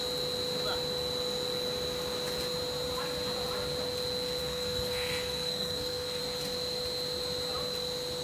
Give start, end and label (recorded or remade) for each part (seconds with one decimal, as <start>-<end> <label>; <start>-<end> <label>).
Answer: 0.0-4.4 recorded; 4.4-6.2 remade; 6.2-8.2 recorded